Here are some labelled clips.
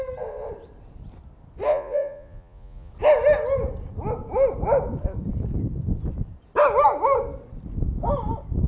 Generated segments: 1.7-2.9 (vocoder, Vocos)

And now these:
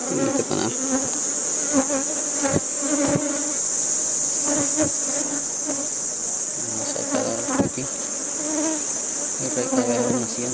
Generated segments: 2.1-6.4 (vocoder, Vocos)

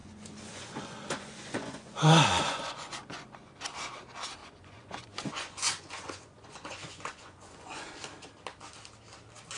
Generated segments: 0.0-3.5 (vocoder, Vocos); 4.4-7.9

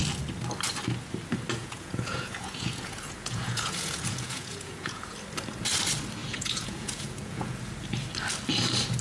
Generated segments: 1.6-5.0 (vocoder, Vocos); 6.2-7.6

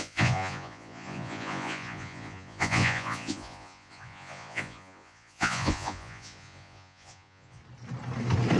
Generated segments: 0.0-7.6 (vocoder, Vocos)